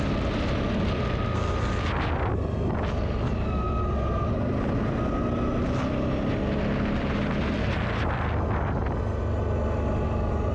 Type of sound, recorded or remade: recorded